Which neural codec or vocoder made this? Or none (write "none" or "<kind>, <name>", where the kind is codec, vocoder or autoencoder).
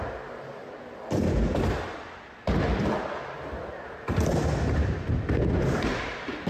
none